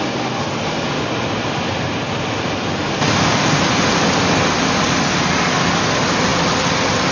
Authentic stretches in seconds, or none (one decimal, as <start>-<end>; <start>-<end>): 0.0-7.1